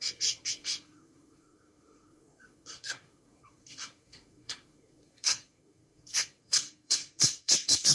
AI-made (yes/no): yes